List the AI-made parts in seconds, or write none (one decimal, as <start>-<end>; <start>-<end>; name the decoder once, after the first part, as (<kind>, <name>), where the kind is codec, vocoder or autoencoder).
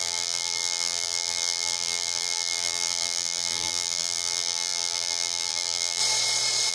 0.0-6.0 (vocoder, BigVGAN v2)